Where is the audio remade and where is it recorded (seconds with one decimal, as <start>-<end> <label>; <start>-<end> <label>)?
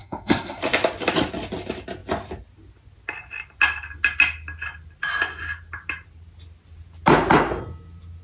0.0-0.6 remade; 0.6-8.2 recorded